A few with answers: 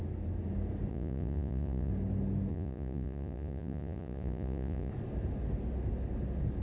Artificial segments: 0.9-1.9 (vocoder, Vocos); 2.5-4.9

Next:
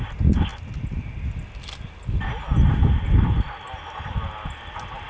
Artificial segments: none

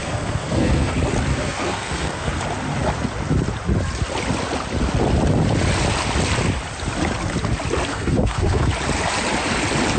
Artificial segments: 0.0-0.9 (codec, SNAC); 1.3-2.3; 7.9-8.7

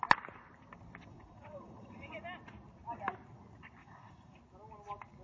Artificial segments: 1.1-2.1 (vocoder, Vocos); 3.8-4.4

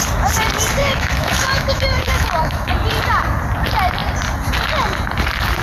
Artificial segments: 0.8-2.7 (autoencoder, DAC-VAE)

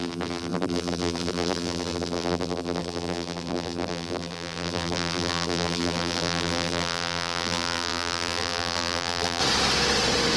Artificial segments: 0.0-9.4 (vocoder, BigVGAN v2)

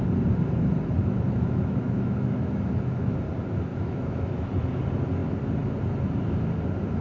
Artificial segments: 1.0-3.2 (autoencoder, DAC-VAE); 3.7-4.7